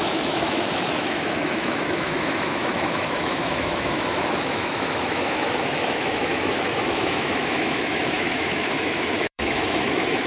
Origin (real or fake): fake